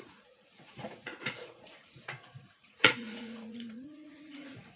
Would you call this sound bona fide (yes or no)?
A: no